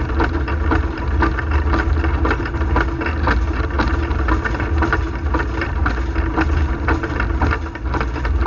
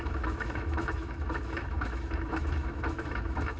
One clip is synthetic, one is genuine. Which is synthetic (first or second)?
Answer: second